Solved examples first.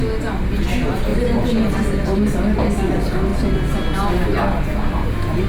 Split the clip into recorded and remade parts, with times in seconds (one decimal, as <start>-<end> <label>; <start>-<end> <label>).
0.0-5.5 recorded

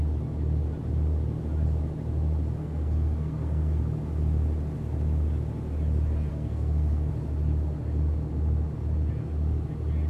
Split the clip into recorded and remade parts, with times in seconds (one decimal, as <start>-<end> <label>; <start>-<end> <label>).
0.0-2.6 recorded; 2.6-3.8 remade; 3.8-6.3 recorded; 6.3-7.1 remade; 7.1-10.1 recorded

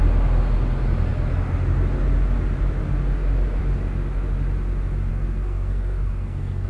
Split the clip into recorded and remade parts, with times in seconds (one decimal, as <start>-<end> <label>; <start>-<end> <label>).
0.0-5.1 recorded; 5.1-6.7 remade

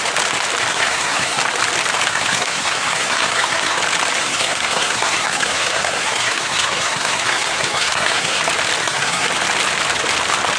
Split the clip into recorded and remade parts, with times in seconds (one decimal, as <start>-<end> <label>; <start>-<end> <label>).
0.0-0.7 recorded; 0.7-1.4 remade; 1.4-2.1 recorded; 2.1-3.8 remade; 3.8-4.2 recorded; 4.2-8.4 remade; 8.4-8.8 recorded; 8.8-9.3 remade; 9.3-10.6 recorded